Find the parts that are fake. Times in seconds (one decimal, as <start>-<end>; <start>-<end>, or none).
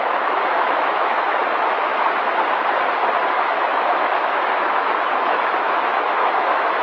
0.0-1.9; 3.3-6.8